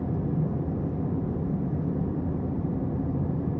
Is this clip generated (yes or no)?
no